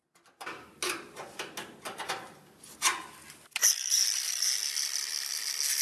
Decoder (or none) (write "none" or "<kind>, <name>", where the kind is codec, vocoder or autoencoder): none